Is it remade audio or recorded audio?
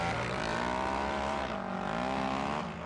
recorded